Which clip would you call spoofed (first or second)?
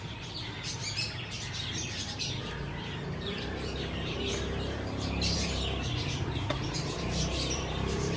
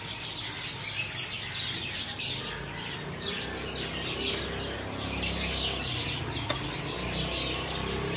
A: first